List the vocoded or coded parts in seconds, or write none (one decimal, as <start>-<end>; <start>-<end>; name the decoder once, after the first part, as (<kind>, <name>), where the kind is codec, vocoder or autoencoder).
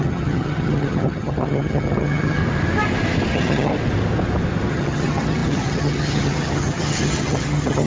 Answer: 0.0-2.4 (vocoder, HiFi-GAN); 3.3-3.7; 4.7-7.9